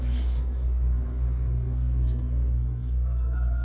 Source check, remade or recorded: remade